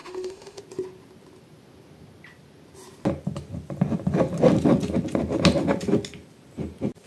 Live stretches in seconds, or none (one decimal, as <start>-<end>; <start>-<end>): 0.6-7.1